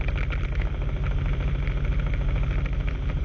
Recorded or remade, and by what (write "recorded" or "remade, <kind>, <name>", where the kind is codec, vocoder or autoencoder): recorded